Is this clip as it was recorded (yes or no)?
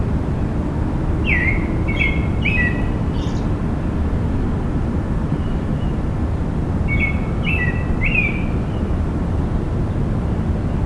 yes